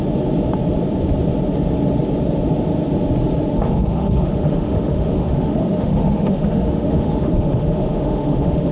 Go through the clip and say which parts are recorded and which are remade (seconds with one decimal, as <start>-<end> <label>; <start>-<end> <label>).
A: 0.0-3.5 recorded; 3.5-8.7 remade